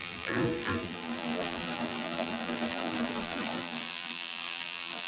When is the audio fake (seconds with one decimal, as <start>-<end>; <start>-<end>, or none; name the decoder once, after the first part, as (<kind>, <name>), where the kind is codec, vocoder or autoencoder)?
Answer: 0.0-5.1 (vocoder, BigVGAN v2)